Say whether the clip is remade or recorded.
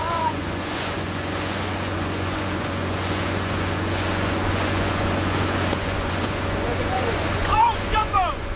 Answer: remade